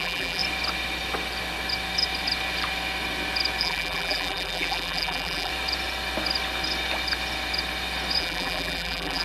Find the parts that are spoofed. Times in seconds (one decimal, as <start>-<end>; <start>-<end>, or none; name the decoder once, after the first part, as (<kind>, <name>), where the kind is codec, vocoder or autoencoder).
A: 0.0-0.4 (vocoder, BigVGAN v2); 3.6-5.5; 8.2-9.2